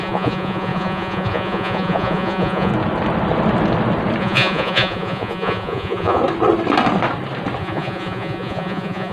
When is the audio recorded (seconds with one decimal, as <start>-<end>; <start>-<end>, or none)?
2.7-4.2; 6.2-7.6